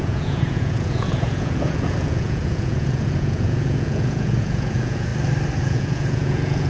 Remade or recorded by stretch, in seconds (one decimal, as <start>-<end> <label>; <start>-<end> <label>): 0.0-5.1 remade; 5.1-5.6 recorded; 5.6-6.7 remade